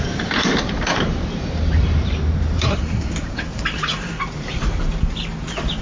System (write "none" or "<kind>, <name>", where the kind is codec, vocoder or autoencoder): vocoder, BigVGAN v2